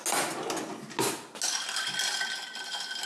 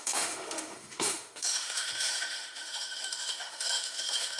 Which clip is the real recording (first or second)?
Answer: first